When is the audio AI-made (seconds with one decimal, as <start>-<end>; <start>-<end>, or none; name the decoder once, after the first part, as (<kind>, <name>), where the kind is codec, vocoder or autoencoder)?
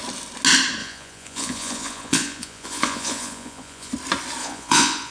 0.8-3.9 (vocoder, Vocos); 4.4-5.1